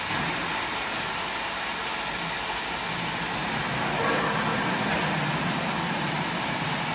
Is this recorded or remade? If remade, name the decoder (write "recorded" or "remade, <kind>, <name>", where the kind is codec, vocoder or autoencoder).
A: recorded